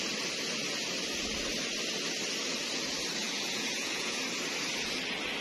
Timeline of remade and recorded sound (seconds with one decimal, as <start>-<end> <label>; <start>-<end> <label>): 0.0-3.2 recorded; 3.2-4.2 remade; 4.2-5.4 recorded